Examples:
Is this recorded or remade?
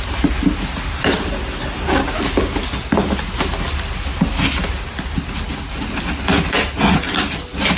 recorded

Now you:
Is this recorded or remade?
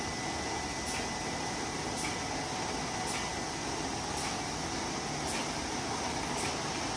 recorded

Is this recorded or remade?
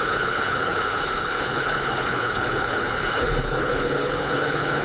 remade